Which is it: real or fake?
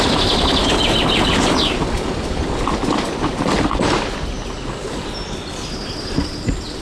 real